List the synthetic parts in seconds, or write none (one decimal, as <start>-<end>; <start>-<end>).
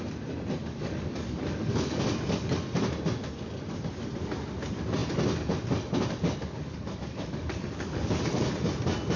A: 0.6-2.0; 6.4-8.4